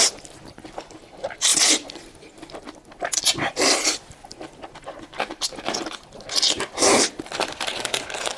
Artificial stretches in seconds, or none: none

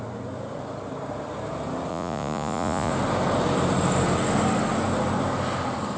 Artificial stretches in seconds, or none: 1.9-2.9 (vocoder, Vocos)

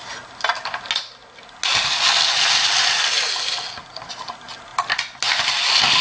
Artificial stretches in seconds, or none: none